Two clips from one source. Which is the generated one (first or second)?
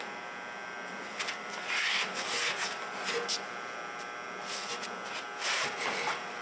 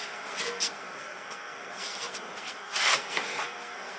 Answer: second